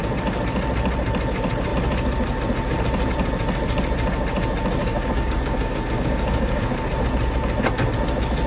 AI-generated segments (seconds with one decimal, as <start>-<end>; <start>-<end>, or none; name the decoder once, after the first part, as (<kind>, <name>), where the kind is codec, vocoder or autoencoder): 4.8-6.8 (codec, DAC)